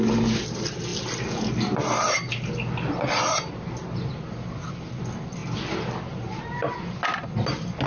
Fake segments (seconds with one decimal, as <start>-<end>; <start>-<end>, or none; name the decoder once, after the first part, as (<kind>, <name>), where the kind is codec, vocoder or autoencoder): none